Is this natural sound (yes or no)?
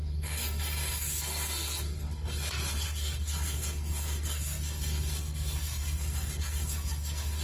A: no